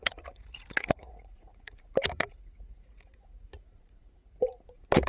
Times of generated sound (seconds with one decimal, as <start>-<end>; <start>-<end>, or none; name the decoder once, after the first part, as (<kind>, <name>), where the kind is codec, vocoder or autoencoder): 0.0-5.1 (vocoder, Vocos)